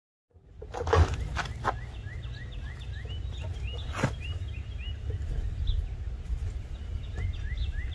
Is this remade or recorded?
recorded